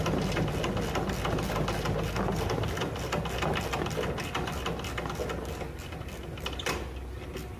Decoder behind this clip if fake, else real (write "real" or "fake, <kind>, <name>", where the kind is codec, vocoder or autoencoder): real